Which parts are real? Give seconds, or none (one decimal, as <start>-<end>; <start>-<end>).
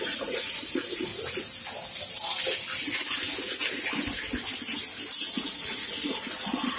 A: 1.1-5.2